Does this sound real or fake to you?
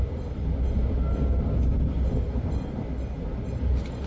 real